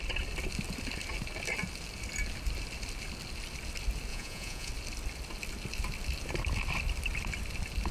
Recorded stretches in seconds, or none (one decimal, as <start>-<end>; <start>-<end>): 0.0-4.1; 4.7-7.9